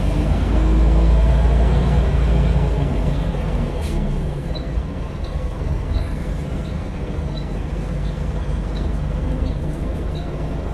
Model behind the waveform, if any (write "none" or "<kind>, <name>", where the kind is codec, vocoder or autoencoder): codec, SNAC